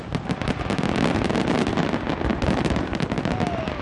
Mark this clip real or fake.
real